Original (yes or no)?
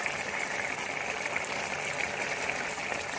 yes